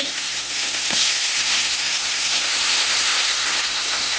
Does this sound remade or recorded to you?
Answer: remade